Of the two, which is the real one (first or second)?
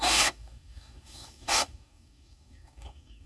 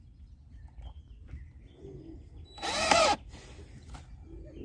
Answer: second